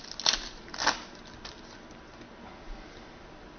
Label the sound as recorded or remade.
recorded